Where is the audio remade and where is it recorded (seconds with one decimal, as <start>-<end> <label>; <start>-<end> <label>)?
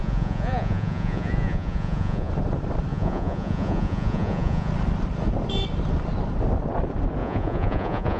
0.0-2.3 remade; 2.3-2.9 recorded; 2.9-4.7 remade; 4.7-7.2 recorded; 7.2-8.2 remade